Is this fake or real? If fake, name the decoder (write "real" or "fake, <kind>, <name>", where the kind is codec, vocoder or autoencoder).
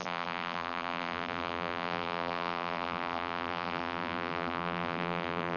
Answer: fake, vocoder, BigVGAN v2